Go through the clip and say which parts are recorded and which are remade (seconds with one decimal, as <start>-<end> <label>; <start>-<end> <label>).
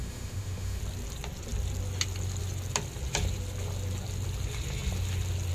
0.0-0.8 remade; 0.8-5.5 recorded